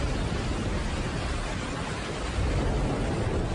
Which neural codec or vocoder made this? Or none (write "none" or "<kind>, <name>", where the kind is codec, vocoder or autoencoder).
none